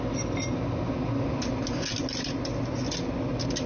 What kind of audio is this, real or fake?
real